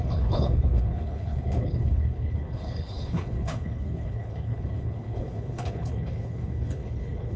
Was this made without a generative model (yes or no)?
no